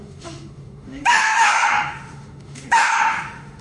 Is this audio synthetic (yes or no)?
yes